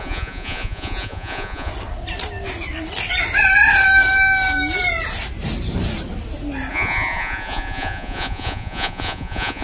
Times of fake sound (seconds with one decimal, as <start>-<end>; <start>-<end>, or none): 0.0-1.7; 6.7-9.6